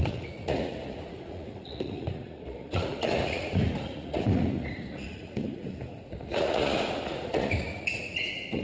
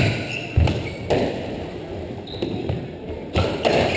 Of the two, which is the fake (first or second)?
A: first